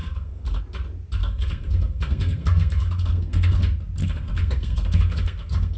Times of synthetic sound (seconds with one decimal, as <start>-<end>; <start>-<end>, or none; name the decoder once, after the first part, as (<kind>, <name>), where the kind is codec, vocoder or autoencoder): 0.0-0.6 (codec, SNAC); 1.2-3.6; 4.0-5.8